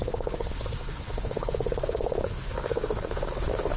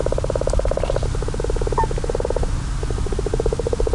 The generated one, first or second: first